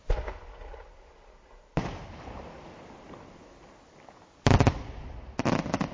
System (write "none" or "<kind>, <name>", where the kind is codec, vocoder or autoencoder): none